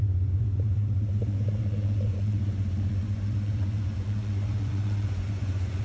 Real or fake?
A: fake